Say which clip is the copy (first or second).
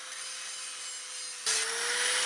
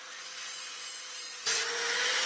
second